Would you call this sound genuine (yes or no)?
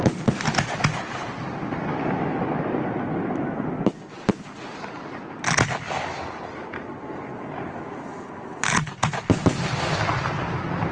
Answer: yes